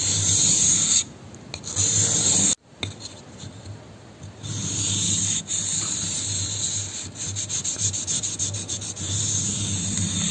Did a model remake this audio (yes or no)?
no